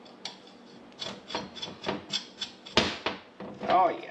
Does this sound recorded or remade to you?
recorded